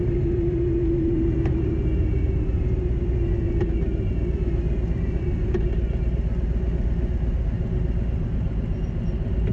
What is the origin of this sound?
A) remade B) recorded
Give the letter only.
B